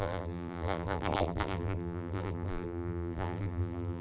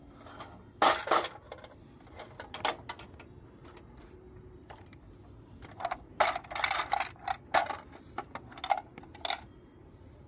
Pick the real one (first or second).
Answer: second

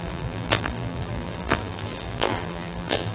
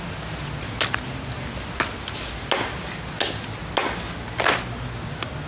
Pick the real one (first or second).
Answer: second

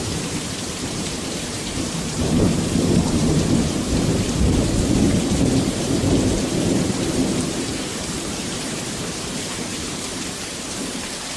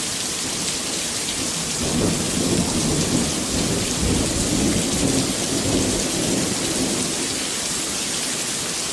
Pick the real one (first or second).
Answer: second